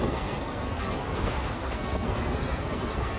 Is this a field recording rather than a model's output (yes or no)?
no